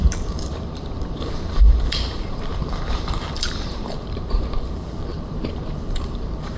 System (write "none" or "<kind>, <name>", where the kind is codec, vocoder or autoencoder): vocoder, BigVGAN v2